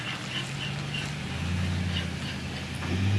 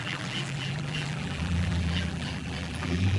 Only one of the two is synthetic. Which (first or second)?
second